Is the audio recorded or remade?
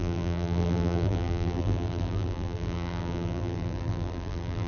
remade